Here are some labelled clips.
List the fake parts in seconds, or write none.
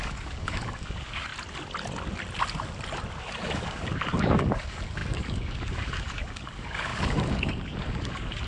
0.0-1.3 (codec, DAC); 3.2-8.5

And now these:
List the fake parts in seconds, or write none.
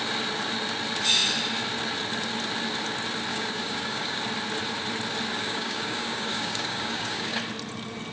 3.3-4.2 (codec, DAC); 5.3-7.4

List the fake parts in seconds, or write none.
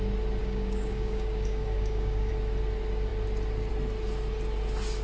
0.4-2.3 (codec, DAC)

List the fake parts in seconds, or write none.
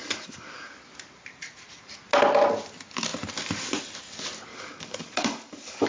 0.0-0.7 (codec, DAC); 4.5-5.9